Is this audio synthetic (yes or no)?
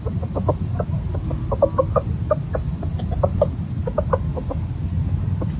no